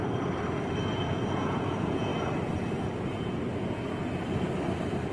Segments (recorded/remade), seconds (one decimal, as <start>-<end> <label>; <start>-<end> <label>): 0.0-0.9 recorded; 0.9-2.1 remade; 2.1-3.0 recorded; 3.0-3.4 remade; 3.4-5.1 recorded